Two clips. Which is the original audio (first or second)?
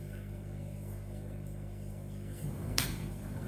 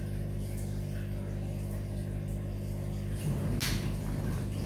second